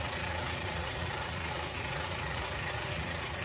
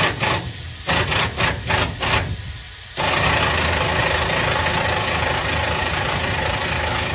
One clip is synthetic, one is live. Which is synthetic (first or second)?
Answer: first